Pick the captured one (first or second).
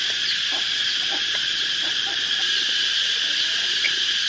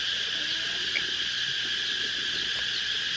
second